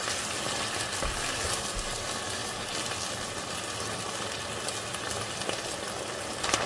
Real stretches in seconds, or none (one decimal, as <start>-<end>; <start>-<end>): 0.0-6.7